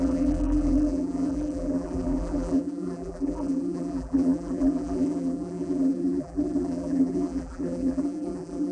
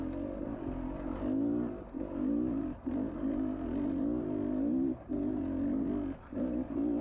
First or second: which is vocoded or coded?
first